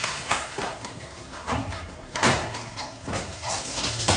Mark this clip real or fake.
fake